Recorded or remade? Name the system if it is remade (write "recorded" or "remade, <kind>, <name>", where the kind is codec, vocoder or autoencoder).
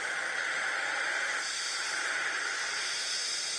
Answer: remade, vocoder, BigVGAN v2